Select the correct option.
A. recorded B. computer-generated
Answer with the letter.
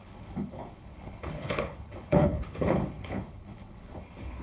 B